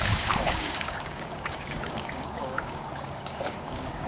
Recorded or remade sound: remade